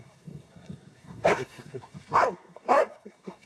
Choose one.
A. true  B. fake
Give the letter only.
B